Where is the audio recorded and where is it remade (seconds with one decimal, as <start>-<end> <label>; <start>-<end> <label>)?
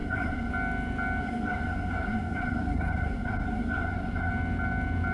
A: 0.0-0.5 remade; 0.5-1.2 recorded; 1.2-4.3 remade; 4.3-5.1 recorded